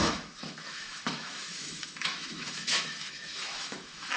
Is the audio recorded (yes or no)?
no